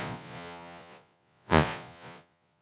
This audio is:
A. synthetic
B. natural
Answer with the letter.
A